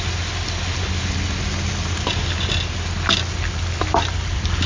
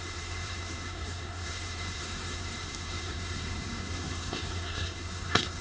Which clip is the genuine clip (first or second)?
first